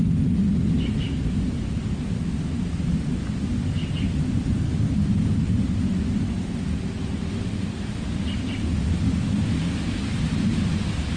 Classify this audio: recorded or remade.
recorded